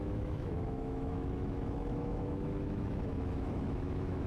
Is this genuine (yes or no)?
no